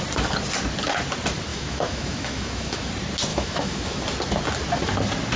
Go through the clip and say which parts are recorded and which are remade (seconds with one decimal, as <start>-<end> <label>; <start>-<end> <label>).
0.0-1.5 recorded; 1.5-2.9 remade; 2.9-3.3 recorded; 3.3-4.0 remade; 4.0-5.4 recorded

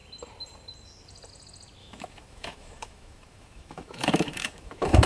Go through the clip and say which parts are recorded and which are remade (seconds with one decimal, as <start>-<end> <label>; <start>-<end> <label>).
0.0-1.8 recorded; 1.8-5.1 remade

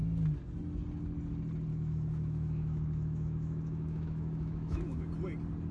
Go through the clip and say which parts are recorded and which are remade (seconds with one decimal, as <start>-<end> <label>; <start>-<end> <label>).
0.0-1.7 recorded; 1.7-5.1 remade; 5.1-5.7 recorded

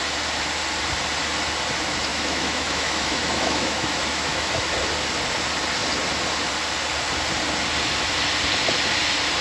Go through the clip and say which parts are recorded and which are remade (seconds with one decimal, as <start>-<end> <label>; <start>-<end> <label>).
0.0-2.1 recorded; 2.1-4.5 remade; 4.5-9.4 recorded